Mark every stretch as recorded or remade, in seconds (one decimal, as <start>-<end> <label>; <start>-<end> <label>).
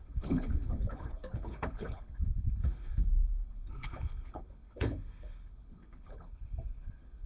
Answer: 0.0-7.3 remade